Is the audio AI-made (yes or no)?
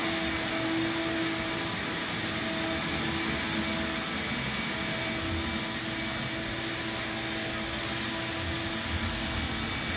no